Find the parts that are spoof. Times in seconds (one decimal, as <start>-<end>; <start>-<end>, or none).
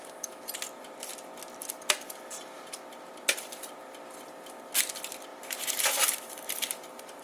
5.3-7.2